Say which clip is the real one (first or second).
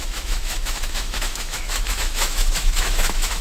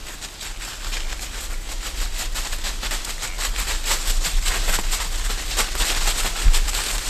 second